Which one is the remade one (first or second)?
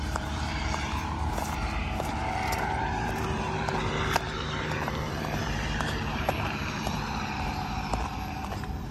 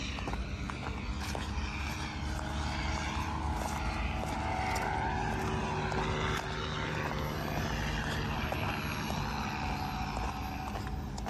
first